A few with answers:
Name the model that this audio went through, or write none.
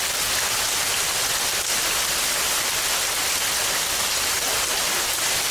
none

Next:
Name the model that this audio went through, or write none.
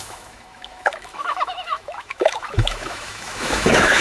autoencoder, DAC-VAE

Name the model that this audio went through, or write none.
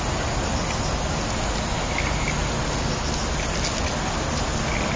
none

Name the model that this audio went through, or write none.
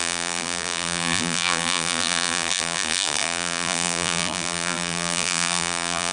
vocoder, BigVGAN v2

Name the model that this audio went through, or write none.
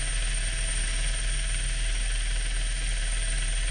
none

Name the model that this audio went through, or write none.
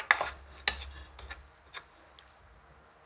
none